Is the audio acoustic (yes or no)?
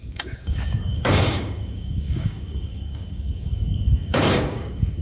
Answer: no